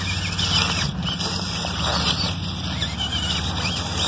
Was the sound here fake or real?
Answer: real